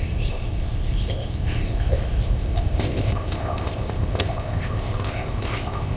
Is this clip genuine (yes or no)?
no